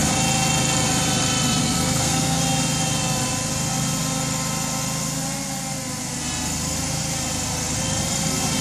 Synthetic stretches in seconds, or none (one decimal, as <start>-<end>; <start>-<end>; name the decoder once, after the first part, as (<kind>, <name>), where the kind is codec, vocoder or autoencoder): 1.6-2.4 (codec, SNAC)